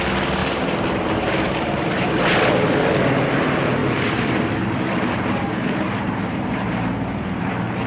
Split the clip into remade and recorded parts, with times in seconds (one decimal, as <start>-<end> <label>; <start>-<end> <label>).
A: 0.0-0.4 recorded; 0.4-1.8 remade; 1.8-3.8 recorded; 3.8-7.5 remade; 7.5-7.9 recorded